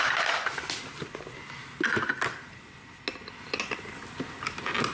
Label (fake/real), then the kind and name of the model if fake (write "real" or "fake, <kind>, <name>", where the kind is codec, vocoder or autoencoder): real